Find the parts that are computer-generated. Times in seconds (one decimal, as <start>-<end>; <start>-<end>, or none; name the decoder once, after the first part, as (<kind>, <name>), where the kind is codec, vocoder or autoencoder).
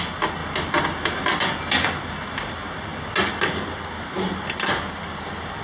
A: none